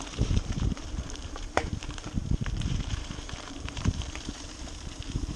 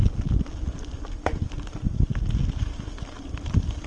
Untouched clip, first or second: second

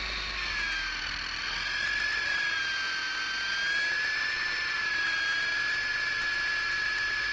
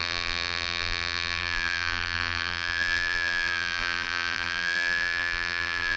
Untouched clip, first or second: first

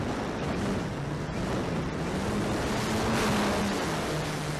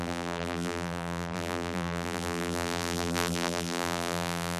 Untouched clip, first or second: first